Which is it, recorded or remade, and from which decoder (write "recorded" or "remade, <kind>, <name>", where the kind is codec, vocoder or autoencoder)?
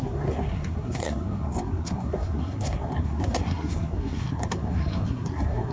remade, codec, SNAC